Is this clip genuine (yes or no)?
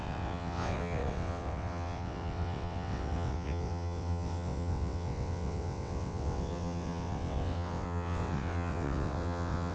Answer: no